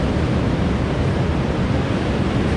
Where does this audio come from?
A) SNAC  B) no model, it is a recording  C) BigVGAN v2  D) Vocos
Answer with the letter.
B